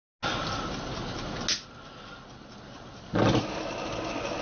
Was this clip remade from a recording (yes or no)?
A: no